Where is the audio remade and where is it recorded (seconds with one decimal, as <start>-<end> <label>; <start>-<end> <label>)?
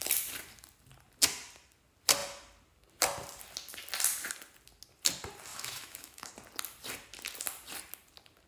0.0-5.5 recorded; 5.5-6.3 remade; 6.3-8.5 recorded